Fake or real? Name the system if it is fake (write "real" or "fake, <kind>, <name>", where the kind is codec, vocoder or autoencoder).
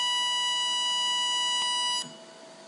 real